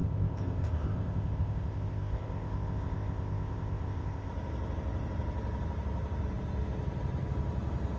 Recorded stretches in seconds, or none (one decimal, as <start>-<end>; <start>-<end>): 4.3-8.0